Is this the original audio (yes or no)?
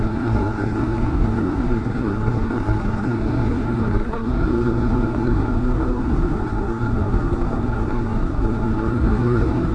no